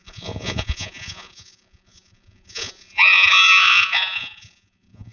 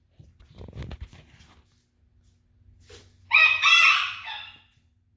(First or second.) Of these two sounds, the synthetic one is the first